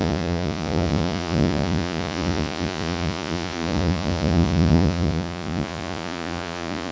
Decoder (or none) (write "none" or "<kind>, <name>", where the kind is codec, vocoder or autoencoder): vocoder, Vocos